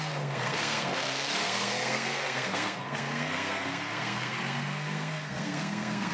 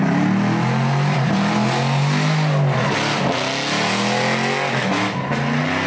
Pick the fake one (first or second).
first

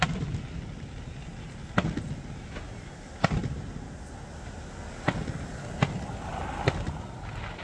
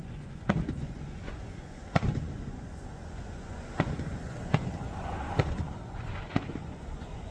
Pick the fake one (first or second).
second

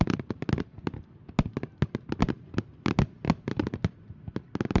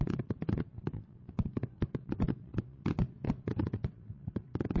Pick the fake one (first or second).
second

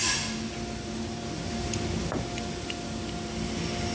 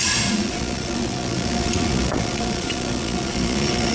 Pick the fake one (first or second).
second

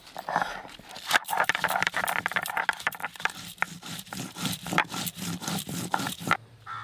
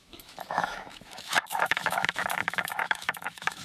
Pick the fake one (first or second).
second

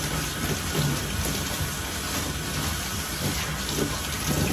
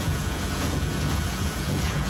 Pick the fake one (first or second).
second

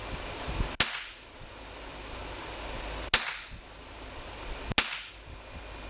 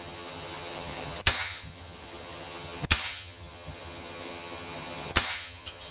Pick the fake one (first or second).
second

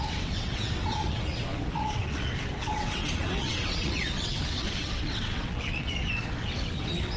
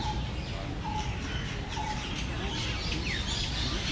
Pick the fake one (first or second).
first